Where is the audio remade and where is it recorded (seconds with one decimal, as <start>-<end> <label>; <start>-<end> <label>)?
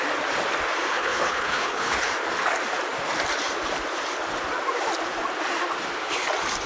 0.0-0.9 recorded; 0.9-2.1 remade; 2.1-6.7 recorded